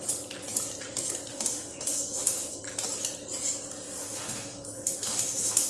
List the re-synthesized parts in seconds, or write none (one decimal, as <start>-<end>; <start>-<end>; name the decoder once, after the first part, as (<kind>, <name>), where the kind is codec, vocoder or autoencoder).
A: 1.3-2.6 (autoencoder, DAC-VAE); 4.0-5.7